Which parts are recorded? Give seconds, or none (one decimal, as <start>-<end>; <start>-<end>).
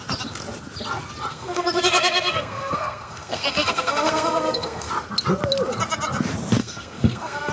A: 0.0-1.3; 4.9-6.6